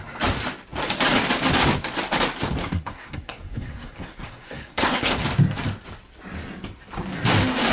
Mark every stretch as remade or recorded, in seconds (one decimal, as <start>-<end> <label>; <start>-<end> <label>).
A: 0.0-2.6 recorded; 2.6-5.1 remade; 5.1-7.7 recorded